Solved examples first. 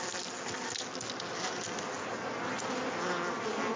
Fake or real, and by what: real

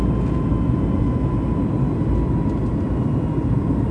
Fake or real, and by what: real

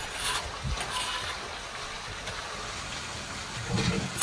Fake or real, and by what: real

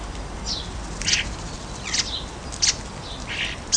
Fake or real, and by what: real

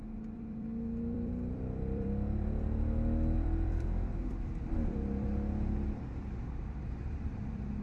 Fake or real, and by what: fake, vocoder, BigVGAN v2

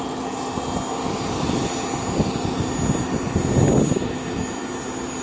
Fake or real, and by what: real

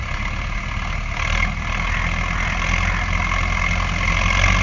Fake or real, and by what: real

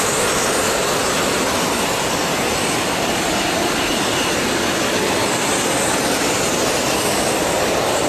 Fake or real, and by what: real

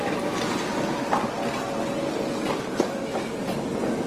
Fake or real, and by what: real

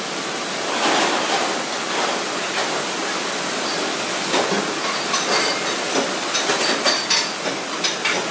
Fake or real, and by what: real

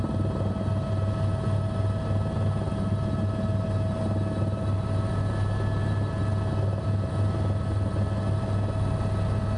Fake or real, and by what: real